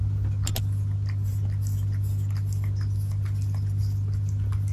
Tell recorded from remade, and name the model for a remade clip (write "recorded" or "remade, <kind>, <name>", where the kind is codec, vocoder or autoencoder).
recorded